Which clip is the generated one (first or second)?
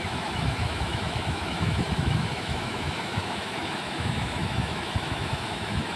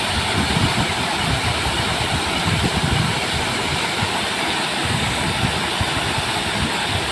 first